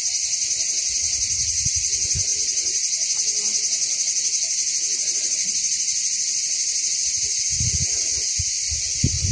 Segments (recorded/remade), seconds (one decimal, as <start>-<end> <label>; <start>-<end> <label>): 0.0-9.3 recorded